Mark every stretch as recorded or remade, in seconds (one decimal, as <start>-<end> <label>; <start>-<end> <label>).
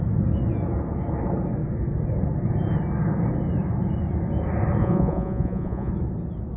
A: 0.0-4.8 recorded; 4.8-5.9 remade; 5.9-6.6 recorded